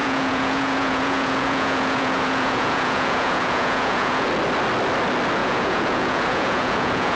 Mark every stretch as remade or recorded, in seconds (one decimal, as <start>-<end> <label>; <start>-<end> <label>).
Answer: 0.0-4.3 remade; 4.3-5.4 recorded; 5.4-7.2 remade